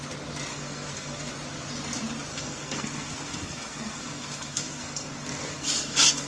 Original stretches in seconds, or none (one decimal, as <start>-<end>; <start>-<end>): 0.0-0.5; 1.3-2.3